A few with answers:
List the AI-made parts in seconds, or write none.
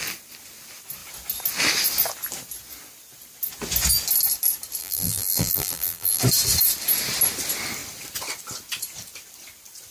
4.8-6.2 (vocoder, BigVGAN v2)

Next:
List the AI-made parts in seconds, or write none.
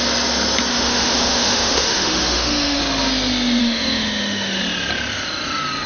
0.7-2.8 (autoencoder, DAC-VAE); 3.6-4.6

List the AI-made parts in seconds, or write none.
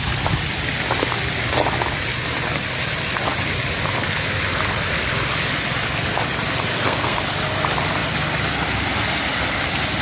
6.7-7.2 (codec, SNAC)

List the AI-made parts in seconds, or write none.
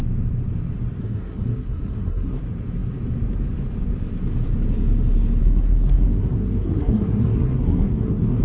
1.0-2.4 (codec, SNAC); 5.4-8.4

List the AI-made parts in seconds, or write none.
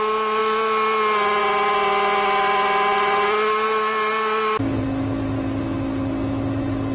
none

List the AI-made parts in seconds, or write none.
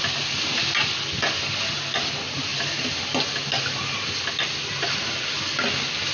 none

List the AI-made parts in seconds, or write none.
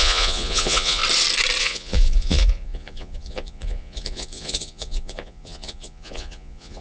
0.0-1.0 (vocoder, Vocos); 1.6-6.8